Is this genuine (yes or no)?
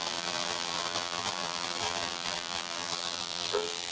no